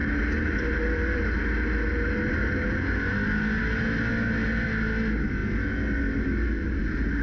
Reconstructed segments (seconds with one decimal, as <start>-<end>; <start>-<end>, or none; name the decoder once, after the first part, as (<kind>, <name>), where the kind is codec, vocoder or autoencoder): none